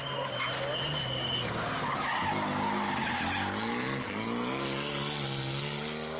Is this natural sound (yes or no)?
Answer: yes